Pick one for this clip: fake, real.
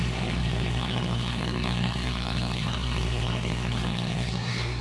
fake